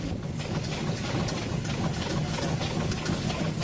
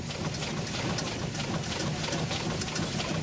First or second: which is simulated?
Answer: first